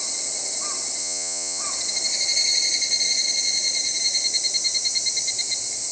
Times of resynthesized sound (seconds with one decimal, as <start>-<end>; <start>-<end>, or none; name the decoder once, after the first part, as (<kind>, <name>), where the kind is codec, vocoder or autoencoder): 1.0-1.6 (vocoder, Vocos)